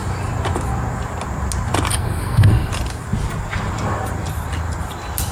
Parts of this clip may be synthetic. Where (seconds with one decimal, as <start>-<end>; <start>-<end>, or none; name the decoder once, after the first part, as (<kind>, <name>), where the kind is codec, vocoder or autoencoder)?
1.9-2.7 (codec, SNAC)